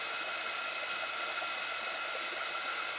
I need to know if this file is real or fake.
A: real